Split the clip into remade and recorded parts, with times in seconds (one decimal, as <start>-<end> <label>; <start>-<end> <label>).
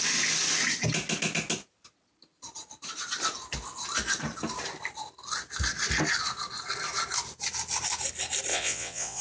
0.0-8.5 recorded; 8.5-9.2 remade